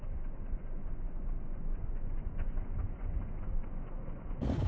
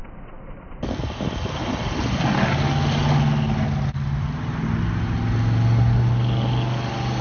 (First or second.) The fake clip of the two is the first